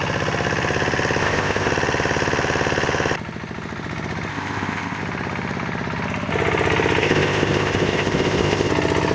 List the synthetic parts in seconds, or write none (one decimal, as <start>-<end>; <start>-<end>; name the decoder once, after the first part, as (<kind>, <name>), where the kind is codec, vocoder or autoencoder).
1.2-1.7 (codec, ZipCodec); 4.3-5.0; 7.0-8.7